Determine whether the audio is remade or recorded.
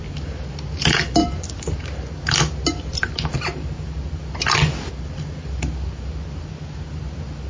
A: recorded